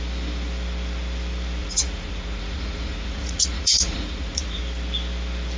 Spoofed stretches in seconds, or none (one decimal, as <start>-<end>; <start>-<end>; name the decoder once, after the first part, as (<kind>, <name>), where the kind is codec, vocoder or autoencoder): 1.6-4.6 (vocoder, Vocos)